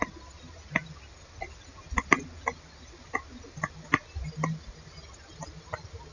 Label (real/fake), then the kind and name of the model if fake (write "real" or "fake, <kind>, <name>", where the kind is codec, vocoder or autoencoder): real